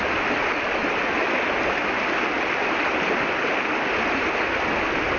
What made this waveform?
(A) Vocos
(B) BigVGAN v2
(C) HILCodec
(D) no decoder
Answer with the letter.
D